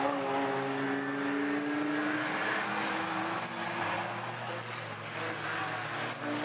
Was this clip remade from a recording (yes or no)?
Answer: no